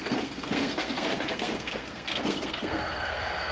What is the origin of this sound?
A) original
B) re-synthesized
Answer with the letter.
B